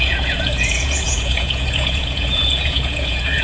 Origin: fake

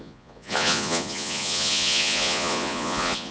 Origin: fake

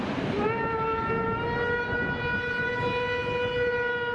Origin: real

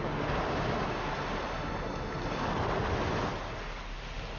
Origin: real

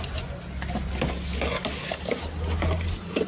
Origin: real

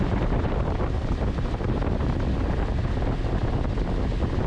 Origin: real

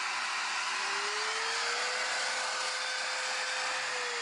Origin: real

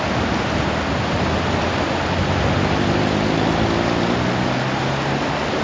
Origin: real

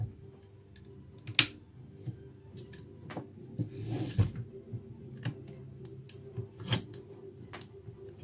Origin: real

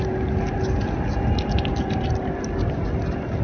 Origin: real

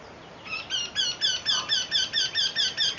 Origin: real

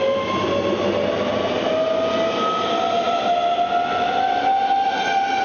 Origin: real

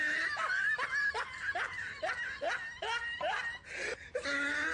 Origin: real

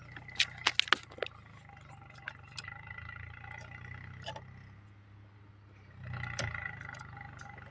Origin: real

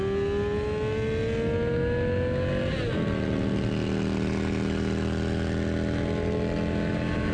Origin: real